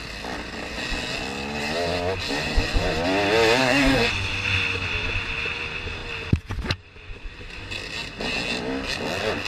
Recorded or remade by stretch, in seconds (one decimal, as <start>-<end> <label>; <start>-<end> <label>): 0.0-3.6 recorded; 3.6-4.1 remade; 4.1-9.5 recorded